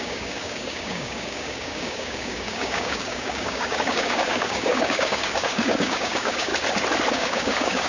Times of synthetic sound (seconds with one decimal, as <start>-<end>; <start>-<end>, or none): 0.0-6.5; 7.1-7.9